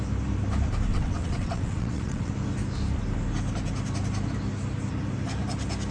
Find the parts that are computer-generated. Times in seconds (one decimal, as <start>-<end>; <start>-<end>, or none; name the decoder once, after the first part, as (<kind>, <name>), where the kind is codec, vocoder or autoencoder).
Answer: 0.9-2.3 (vocoder, WaveNeXt)